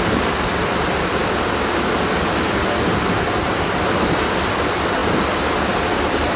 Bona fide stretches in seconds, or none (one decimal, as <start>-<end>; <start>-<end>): 0.0-6.4